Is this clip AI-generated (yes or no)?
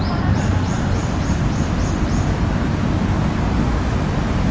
no